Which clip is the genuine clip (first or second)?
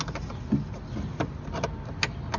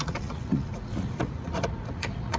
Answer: first